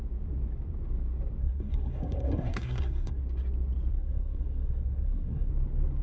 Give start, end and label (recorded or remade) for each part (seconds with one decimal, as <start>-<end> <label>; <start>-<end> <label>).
0.0-1.4 recorded; 1.4-3.2 remade; 3.2-3.9 recorded; 3.9-5.5 remade; 5.5-6.0 recorded